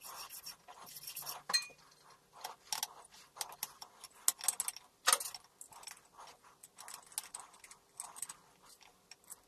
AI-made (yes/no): no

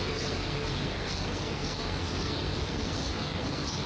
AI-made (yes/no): yes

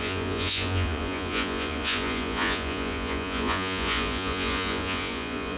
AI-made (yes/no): yes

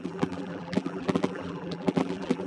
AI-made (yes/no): yes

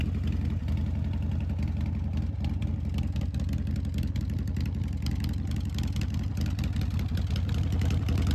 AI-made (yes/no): no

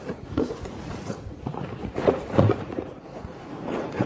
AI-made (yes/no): yes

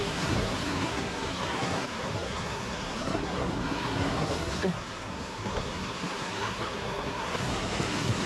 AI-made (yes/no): yes